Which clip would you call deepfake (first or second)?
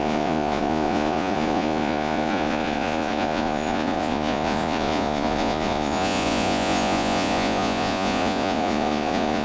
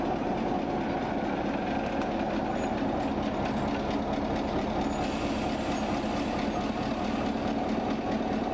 first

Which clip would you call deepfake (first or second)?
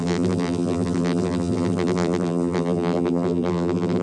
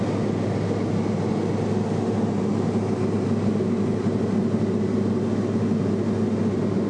first